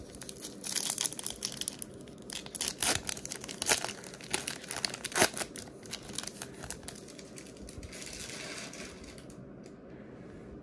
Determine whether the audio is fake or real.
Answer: real